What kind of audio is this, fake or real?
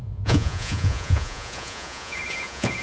fake